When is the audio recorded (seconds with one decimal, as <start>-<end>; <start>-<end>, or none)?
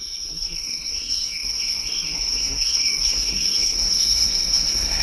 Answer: none